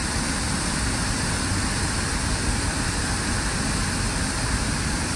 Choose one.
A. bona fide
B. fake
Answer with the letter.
A